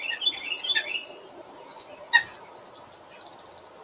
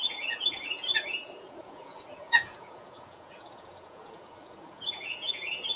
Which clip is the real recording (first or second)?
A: first